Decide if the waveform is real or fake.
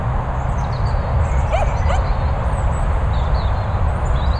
real